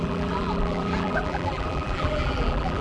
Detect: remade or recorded remade